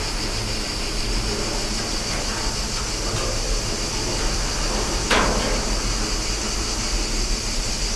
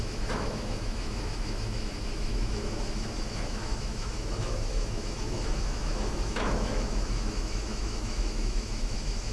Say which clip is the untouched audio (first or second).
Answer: first